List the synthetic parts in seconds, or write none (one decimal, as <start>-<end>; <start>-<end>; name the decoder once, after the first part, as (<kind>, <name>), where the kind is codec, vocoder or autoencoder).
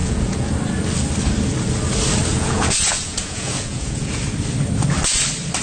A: 0.0-0.5 (vocoder, Vocos); 2.3-4.2